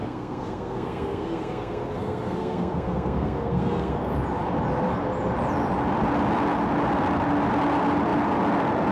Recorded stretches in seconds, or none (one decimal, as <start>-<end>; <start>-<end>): 4.1-8.9